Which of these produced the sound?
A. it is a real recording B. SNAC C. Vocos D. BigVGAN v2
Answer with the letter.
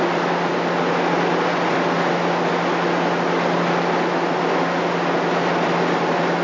A